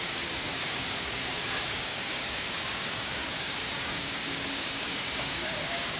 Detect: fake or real fake